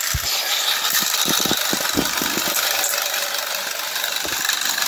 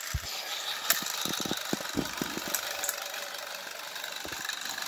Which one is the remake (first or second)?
first